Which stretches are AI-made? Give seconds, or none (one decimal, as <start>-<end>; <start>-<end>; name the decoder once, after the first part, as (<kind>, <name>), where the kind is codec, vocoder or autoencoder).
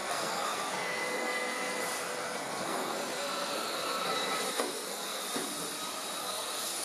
0.0-1.8 (codec, SNAC); 2.2-4.1; 4.5-5.2; 6.2-6.8